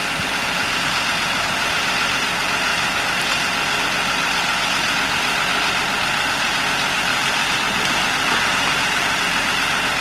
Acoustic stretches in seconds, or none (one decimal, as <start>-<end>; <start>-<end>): 0.9-7.1